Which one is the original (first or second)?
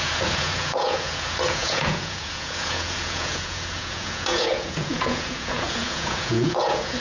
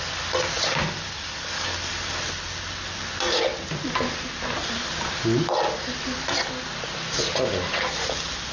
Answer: second